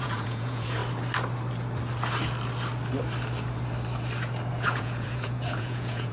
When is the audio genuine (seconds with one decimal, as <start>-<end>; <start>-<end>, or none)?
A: 0.8-4.5

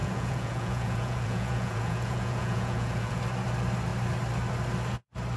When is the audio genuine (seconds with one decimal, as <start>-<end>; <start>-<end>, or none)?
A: 3.2-5.4